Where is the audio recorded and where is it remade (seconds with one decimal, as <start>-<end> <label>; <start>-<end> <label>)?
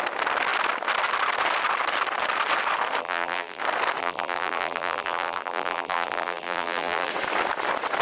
0.0-3.0 recorded; 3.0-3.6 remade; 3.6-4.0 recorded; 4.0-7.1 remade; 7.1-8.0 recorded